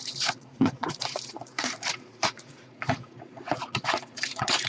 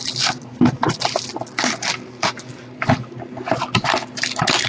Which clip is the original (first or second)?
second